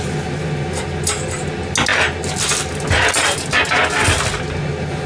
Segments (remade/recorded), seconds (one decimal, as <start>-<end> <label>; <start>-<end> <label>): 0.0-5.1 recorded